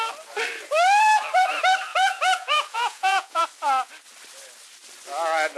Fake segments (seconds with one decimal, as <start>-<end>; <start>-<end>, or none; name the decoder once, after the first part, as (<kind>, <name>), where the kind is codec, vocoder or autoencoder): 1.9-3.4 (vocoder, Vocos)